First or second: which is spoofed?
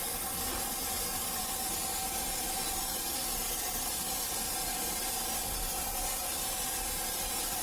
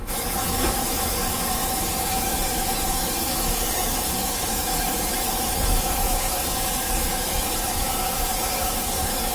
second